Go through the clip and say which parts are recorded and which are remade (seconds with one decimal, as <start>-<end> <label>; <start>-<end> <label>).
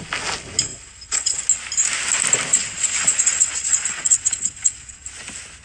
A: 0.0-0.7 recorded; 0.7-1.4 remade; 1.4-2.5 recorded; 2.5-5.1 remade; 5.1-5.6 recorded